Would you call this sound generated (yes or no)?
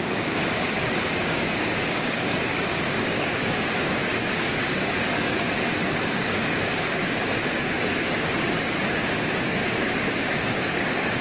yes